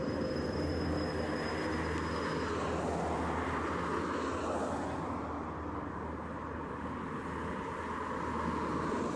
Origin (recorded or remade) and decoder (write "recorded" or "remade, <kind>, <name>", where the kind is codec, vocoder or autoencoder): recorded